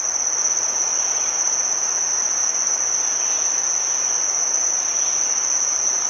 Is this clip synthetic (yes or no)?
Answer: no